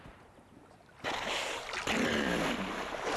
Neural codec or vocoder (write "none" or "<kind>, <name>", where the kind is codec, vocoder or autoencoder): none